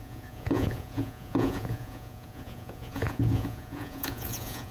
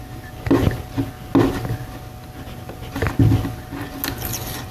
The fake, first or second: first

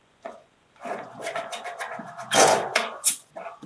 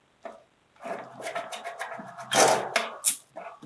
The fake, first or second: first